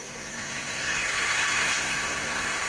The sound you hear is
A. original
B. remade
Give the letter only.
B